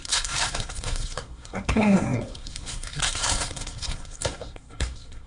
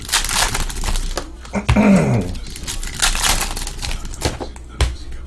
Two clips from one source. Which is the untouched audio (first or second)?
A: second